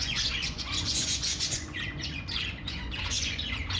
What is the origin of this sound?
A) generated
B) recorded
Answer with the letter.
A